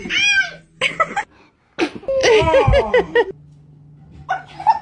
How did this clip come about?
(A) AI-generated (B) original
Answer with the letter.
B